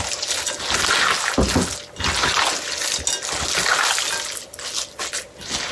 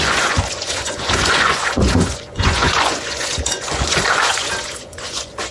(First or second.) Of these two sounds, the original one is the first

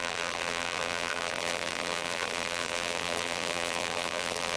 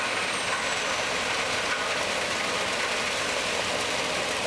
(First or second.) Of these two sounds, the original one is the second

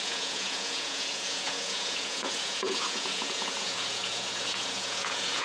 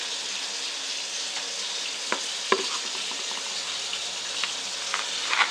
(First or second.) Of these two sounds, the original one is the second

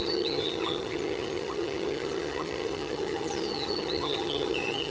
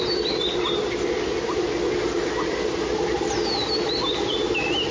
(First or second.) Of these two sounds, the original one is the second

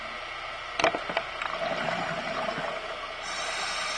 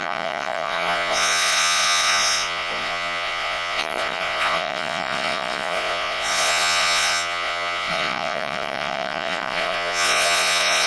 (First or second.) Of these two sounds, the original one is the first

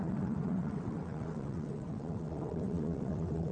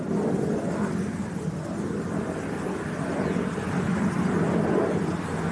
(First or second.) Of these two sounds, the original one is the second